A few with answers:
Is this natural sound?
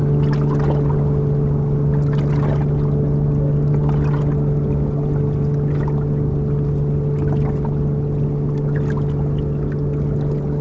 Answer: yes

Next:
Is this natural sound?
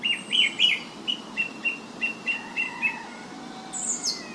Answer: yes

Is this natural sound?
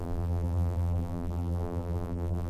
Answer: no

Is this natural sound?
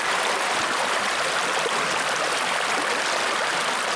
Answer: yes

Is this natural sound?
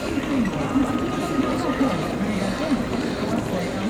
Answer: yes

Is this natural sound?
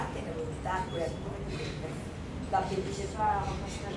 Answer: yes